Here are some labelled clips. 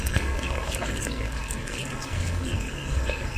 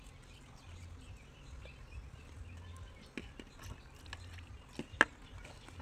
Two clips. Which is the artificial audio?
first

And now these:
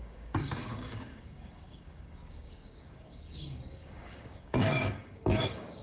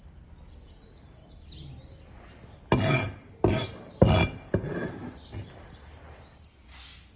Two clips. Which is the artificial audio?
first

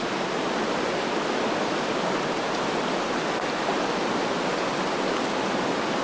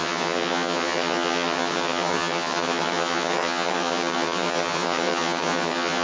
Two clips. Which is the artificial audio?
second